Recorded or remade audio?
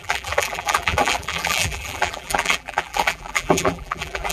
remade